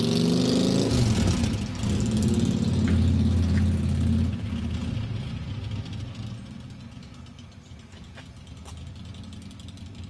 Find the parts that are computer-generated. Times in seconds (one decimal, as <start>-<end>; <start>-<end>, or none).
none

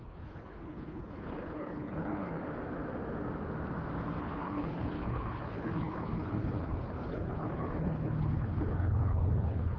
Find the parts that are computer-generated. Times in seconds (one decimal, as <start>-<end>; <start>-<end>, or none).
0.0-2.4; 4.2-9.8